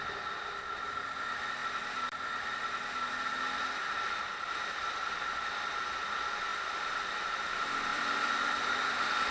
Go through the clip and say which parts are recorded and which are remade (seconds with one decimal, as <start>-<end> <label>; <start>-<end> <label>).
0.0-1.6 recorded; 1.6-2.6 remade; 2.6-6.5 recorded; 6.5-7.1 remade; 7.1-7.9 recorded; 7.9-9.3 remade